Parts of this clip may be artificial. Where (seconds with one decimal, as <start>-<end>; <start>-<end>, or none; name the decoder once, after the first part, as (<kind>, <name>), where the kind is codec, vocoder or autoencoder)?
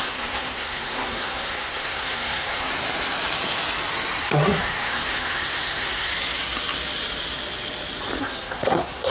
0.0-2.7 (codec, SNAC); 4.2-6.1; 8.2-9.1